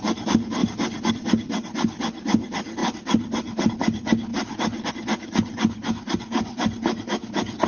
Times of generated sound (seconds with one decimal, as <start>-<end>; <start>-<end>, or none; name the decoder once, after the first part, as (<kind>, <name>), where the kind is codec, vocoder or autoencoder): none